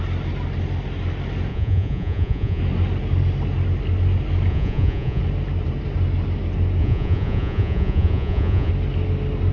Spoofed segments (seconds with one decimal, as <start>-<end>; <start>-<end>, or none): 1.5-2.6; 4.5-5.2; 6.8-8.7